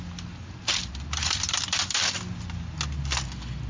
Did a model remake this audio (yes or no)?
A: no